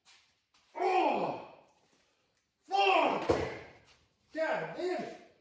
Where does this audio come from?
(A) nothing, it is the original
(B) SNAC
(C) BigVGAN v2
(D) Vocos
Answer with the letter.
C